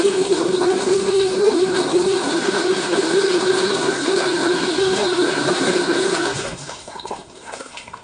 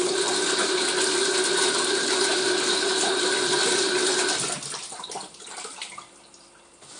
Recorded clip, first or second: second